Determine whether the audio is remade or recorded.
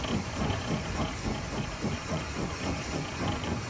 remade